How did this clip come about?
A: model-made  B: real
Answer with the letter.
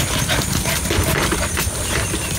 B